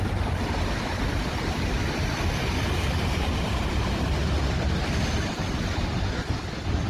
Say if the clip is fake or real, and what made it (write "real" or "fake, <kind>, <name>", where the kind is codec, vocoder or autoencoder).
fake, vocoder, BigVGAN v2